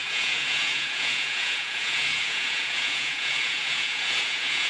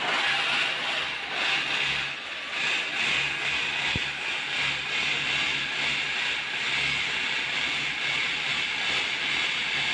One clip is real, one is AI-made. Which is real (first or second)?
second